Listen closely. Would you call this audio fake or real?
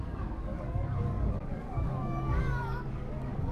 fake